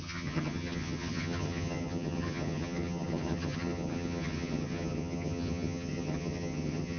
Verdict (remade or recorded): remade